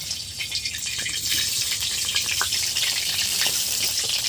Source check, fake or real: fake